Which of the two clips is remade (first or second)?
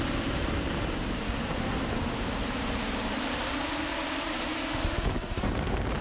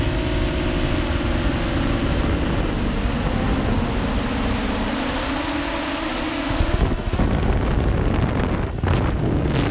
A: first